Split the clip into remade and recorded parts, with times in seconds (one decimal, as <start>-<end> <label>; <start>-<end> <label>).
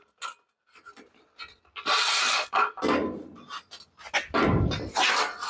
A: 0.0-3.0 recorded; 3.0-3.7 remade; 3.7-5.5 recorded